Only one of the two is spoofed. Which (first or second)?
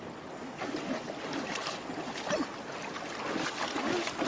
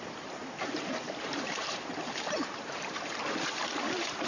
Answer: second